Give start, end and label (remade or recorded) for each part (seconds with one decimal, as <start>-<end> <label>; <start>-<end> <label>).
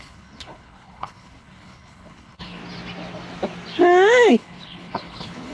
0.0-2.6 remade; 2.6-4.3 recorded; 4.3-5.5 remade